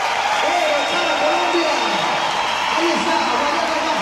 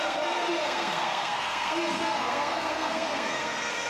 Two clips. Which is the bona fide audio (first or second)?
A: first